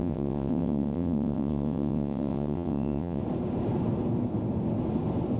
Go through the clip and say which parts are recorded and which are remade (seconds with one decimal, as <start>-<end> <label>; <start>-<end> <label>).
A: 0.0-3.2 remade; 3.2-5.4 recorded